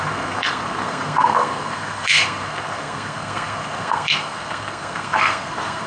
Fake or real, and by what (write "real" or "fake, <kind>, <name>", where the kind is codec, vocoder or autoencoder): fake, codec, SNAC